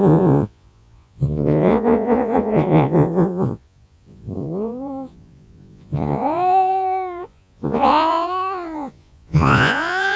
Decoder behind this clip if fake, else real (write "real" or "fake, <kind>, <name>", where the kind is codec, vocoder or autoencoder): fake, vocoder, Vocos